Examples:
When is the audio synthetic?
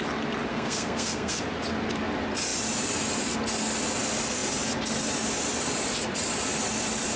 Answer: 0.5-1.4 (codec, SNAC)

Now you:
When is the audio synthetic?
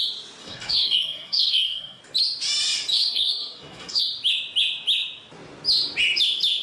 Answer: 0.4-2.0 (codec, SNAC); 2.9-4.0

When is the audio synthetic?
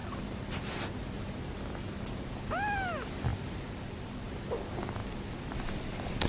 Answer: none